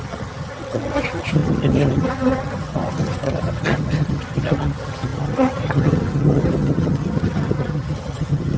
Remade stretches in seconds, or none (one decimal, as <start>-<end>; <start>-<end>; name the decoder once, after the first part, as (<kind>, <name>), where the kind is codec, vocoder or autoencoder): 0.0-8.6 (vocoder, HiFi-GAN)